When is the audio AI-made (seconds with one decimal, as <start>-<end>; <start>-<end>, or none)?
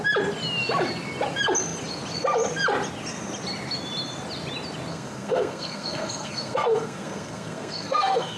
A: 4.9-8.4